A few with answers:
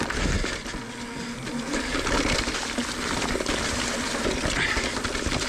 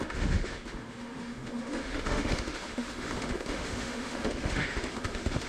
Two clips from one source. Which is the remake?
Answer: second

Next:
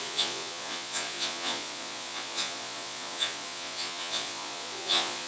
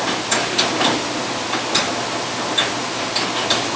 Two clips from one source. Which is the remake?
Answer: first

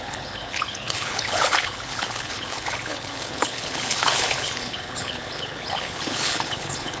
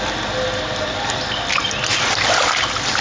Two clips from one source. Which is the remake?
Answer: first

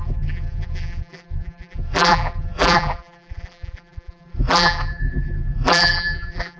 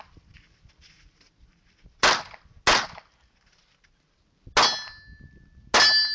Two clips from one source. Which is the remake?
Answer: first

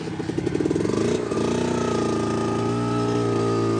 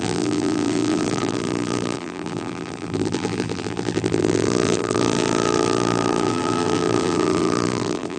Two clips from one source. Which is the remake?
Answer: second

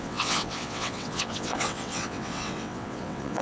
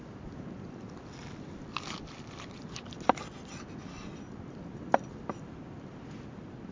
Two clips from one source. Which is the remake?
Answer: first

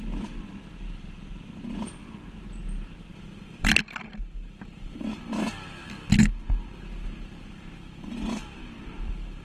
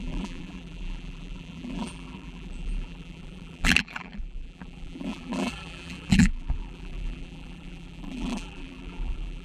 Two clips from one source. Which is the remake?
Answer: second